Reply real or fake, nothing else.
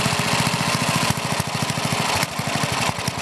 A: real